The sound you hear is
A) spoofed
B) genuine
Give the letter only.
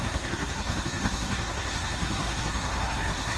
A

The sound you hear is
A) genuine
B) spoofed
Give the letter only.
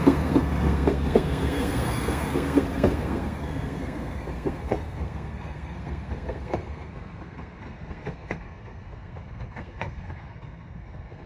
B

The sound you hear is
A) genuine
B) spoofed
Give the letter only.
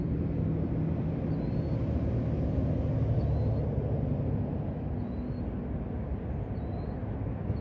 A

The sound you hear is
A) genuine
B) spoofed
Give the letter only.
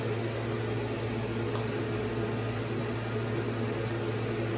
A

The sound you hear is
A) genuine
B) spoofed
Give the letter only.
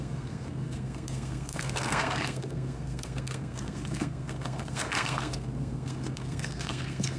B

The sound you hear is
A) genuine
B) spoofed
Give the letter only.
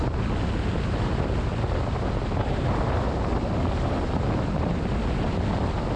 A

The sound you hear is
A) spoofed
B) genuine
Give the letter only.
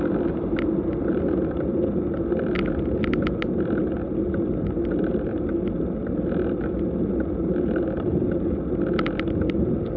B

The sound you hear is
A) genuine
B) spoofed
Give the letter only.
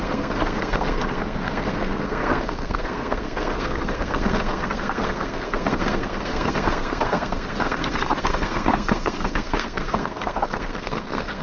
B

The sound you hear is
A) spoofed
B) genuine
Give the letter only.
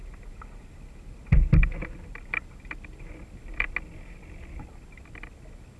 B